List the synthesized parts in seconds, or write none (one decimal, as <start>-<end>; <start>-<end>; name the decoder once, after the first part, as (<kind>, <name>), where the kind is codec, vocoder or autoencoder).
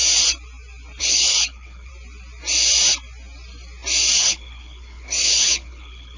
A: 1.0-1.9 (codec, HILCodec); 4.2-6.2